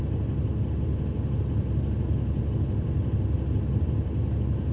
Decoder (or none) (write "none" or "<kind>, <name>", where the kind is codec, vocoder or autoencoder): none